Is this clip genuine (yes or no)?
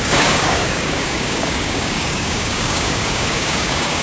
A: no